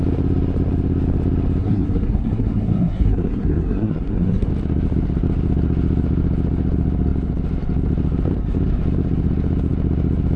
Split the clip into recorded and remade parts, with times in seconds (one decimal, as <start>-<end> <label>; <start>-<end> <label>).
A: 0.0-1.6 recorded; 1.6-4.5 remade; 4.5-10.4 recorded